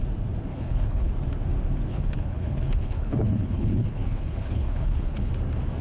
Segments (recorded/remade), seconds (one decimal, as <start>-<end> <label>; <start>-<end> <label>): 0.0-0.5 recorded; 0.5-1.1 remade; 1.1-1.9 recorded; 1.9-5.3 remade; 5.3-5.8 recorded